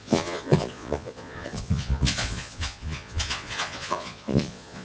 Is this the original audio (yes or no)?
no